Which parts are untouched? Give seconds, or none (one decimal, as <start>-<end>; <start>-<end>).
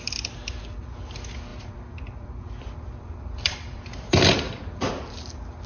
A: 0.0-1.5; 4.9-5.7